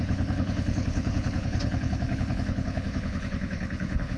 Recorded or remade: remade